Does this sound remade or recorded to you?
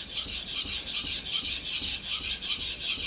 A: recorded